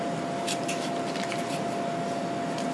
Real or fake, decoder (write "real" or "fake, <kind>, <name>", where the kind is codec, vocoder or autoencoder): real